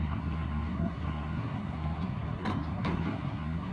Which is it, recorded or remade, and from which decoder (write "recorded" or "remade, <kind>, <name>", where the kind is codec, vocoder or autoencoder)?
remade, codec, SNAC